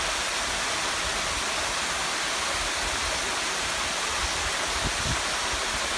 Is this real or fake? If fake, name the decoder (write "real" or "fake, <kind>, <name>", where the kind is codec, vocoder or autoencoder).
real